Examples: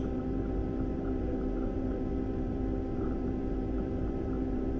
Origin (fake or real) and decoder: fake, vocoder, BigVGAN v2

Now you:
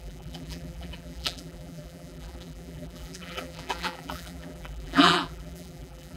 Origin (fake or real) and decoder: fake, vocoder, BigVGAN v2